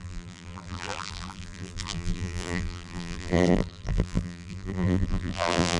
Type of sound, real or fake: fake